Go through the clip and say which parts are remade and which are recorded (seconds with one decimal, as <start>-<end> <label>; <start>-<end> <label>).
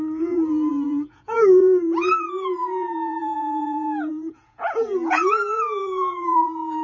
0.0-6.8 remade